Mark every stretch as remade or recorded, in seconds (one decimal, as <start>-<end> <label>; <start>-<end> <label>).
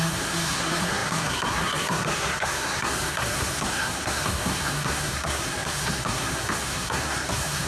0.0-7.7 remade